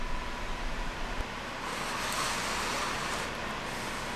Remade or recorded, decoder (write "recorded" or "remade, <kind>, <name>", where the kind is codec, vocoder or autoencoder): recorded